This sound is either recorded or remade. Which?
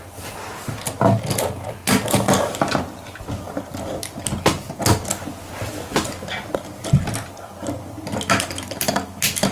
recorded